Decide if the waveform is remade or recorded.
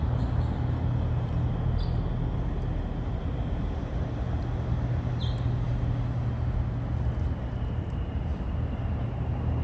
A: recorded